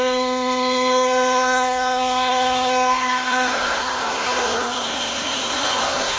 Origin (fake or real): fake